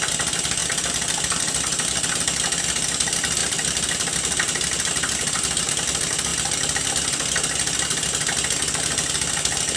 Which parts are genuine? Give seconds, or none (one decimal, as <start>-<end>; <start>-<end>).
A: 0.0-9.8